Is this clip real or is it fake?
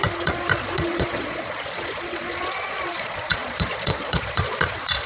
fake